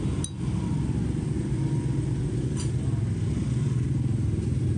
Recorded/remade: recorded